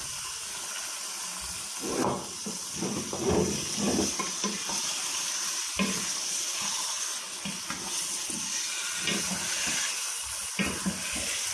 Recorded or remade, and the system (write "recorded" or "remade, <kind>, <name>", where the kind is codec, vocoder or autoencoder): recorded